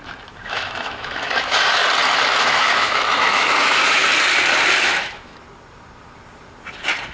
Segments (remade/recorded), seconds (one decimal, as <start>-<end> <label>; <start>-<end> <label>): 0.0-1.8 remade; 1.8-2.4 recorded; 2.4-4.0 remade; 4.0-4.8 recorded; 4.8-5.3 remade; 5.3-7.1 recorded